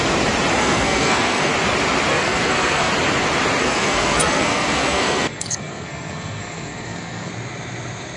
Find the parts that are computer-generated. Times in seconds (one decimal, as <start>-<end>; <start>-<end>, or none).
0.6-1.5; 2.1-2.9; 3.6-7.3